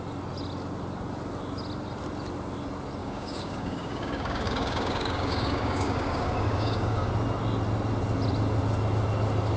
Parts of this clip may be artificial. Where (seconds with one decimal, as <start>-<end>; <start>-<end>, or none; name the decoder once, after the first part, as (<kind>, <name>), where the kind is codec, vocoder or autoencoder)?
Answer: 3.0-7.1 (codec, DAC)